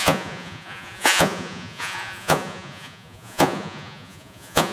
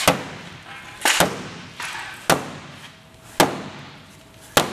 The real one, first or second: second